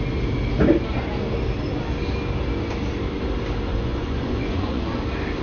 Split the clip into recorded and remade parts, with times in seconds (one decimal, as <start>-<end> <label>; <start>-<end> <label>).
0.0-3.7 recorded; 3.7-5.0 remade; 5.0-5.4 recorded